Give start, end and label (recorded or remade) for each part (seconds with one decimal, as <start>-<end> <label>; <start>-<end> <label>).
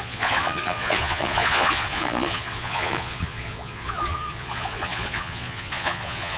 0.0-6.4 remade